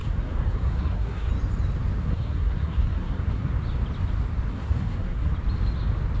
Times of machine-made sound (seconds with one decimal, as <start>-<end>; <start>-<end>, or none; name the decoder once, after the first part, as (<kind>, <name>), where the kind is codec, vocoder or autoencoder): 0.0-1.3 (codec, SNAC); 2.0-3.5; 4.5-5.3

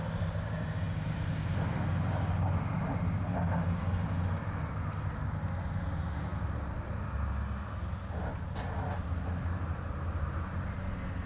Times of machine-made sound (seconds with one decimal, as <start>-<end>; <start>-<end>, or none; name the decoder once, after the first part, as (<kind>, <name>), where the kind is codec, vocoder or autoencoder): none

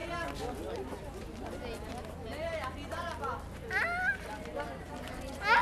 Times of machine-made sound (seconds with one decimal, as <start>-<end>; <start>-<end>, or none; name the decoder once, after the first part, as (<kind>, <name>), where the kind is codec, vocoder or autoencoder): none